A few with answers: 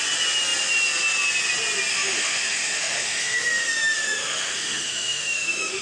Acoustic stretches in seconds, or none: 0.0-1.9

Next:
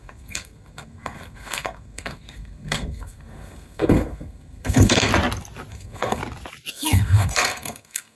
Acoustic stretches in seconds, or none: 5.1-5.7; 6.2-6.7

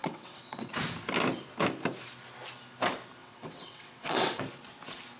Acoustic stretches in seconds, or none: 0.7-3.2; 4.4-5.2

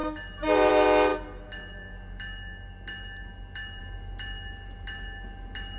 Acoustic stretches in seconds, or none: 0.0-5.8